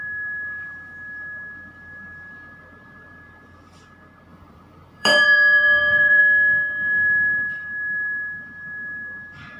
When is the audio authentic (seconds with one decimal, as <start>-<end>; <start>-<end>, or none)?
0.0-4.3; 6.2-9.6